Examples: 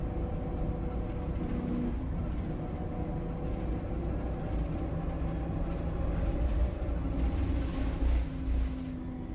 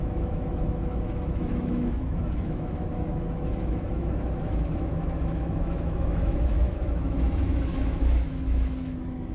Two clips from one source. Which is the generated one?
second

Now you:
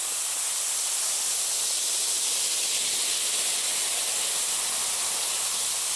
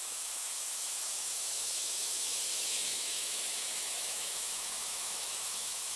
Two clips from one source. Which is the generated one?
second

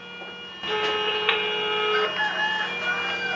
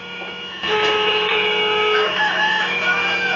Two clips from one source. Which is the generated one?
second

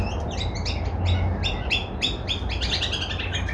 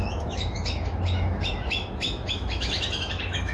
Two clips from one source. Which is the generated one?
second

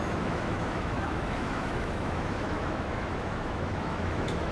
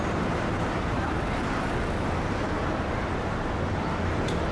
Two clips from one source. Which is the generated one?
first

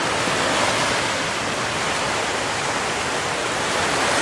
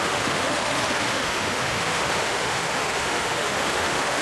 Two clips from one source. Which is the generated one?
second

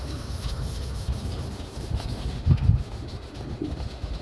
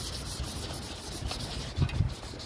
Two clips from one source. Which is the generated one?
first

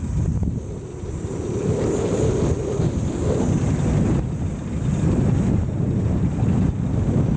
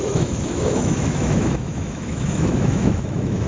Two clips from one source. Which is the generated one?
second